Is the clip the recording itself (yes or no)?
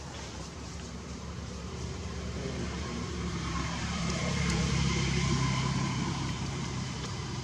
no